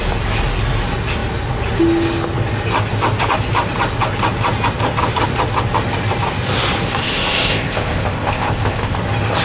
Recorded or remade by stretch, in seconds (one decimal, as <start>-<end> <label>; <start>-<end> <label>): 0.0-7.0 recorded; 7.0-9.0 remade; 9.0-9.4 recorded